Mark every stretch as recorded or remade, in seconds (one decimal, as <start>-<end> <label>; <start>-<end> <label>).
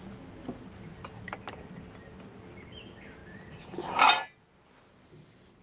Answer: 0.0-5.6 recorded